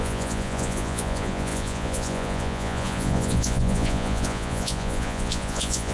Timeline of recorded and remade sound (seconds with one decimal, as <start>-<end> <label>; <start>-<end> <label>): 0.0-5.9 remade